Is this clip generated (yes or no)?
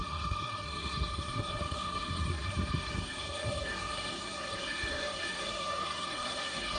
yes